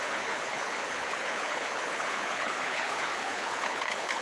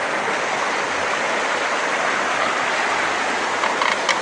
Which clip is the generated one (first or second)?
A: first